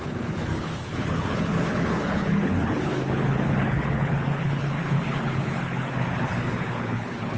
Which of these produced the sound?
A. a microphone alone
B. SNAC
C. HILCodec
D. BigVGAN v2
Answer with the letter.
C